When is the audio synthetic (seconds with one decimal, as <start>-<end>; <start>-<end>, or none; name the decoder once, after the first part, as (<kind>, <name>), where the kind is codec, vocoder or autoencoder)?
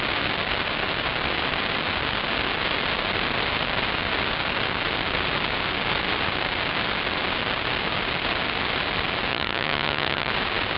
9.3-10.3 (vocoder, HiFi-GAN)